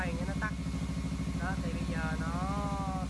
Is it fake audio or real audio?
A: real